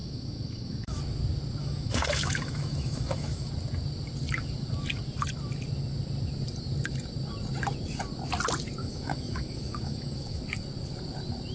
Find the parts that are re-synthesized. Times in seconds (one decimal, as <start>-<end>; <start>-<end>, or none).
0.0-1.0; 1.6-3.5; 8.8-10.4